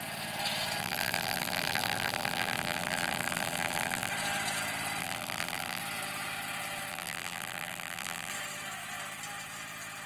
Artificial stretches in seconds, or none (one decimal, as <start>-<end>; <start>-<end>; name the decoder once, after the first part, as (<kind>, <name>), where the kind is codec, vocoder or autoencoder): 0.8-4.1 (vocoder, BigVGAN v2); 5.0-5.8; 6.9-8.3